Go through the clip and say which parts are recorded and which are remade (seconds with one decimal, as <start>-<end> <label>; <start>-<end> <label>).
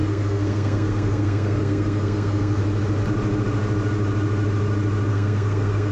0.0-2.6 remade; 2.6-5.1 recorded; 5.1-5.9 remade